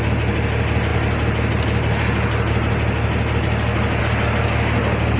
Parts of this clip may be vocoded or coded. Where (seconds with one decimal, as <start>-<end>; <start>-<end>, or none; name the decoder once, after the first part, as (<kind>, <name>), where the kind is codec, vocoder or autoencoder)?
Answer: none